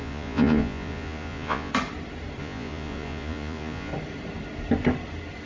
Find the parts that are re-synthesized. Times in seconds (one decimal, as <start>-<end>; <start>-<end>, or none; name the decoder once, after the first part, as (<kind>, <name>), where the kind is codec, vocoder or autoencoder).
0.0-1.7 (vocoder, Vocos); 2.4-3.9